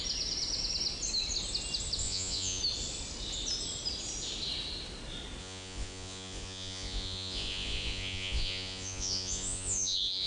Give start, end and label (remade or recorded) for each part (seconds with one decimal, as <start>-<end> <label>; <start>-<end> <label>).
0.0-2.0 recorded; 2.0-2.6 remade; 2.6-5.4 recorded; 5.4-10.3 remade